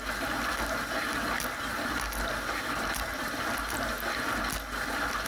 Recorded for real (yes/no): yes